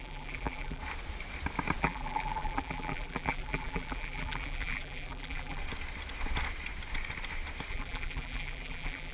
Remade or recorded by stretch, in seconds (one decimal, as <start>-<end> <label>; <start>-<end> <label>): 0.0-0.8 remade; 0.8-1.8 recorded; 1.8-5.6 remade; 5.6-7.7 recorded; 7.7-9.1 remade